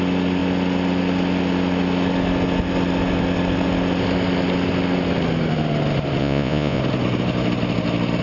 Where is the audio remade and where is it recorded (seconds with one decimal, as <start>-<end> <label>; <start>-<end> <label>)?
0.0-6.2 recorded; 6.2-6.8 remade; 6.8-8.2 recorded